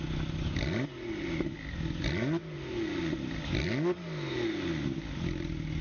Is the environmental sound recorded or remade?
recorded